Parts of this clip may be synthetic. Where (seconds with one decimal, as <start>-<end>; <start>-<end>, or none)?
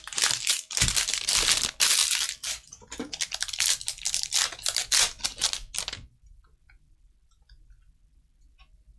none